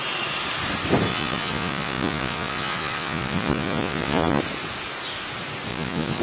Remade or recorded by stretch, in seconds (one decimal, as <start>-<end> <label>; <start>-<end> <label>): 0.0-1.1 recorded; 1.1-4.4 remade; 4.4-5.7 recorded; 5.7-6.2 remade